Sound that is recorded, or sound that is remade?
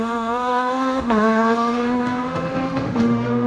remade